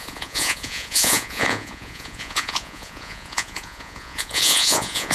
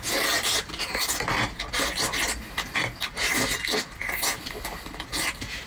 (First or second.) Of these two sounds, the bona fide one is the second